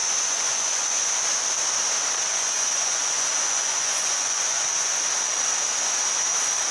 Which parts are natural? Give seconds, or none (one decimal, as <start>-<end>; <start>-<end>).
1.1-2.3; 5.0-6.7